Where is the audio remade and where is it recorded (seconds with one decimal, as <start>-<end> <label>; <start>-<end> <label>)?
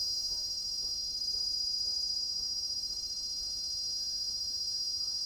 0.0-5.3 recorded